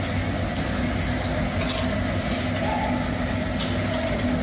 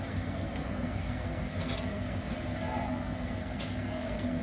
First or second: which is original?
first